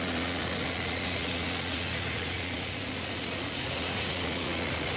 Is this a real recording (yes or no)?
no